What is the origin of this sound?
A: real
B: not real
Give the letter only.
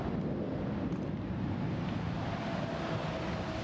A